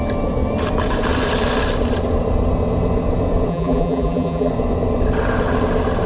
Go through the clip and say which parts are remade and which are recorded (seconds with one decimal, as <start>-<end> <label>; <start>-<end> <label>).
0.0-3.5 recorded; 3.5-4.5 remade; 4.5-6.1 recorded